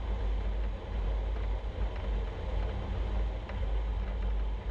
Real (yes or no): yes